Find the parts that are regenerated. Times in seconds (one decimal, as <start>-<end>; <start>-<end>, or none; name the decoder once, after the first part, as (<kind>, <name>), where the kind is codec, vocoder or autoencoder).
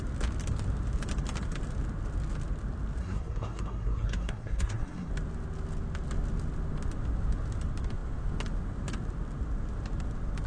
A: 3.0-5.1 (codec, SNAC)